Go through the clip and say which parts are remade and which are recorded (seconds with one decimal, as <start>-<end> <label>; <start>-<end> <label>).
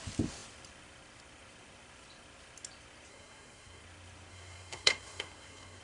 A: 0.0-3.1 recorded; 3.1-3.8 remade; 3.8-4.3 recorded; 4.3-5.8 remade